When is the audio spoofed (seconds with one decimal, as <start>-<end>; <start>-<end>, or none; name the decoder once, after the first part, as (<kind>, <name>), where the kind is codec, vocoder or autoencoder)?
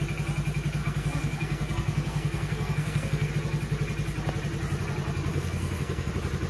0.8-3.3 (codec, SNAC); 5.3-6.1